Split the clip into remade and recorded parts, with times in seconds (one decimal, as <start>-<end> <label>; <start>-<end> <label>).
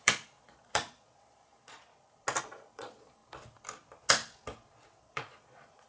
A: 0.0-1.9 remade; 1.9-2.4 recorded; 2.4-3.2 remade; 3.2-5.0 recorded; 5.0-5.9 remade